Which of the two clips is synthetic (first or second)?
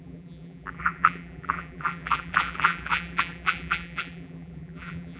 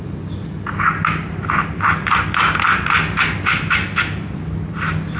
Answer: first